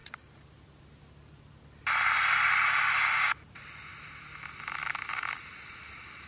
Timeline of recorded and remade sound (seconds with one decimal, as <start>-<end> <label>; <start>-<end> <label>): 0.0-0.5 remade; 0.5-6.3 recorded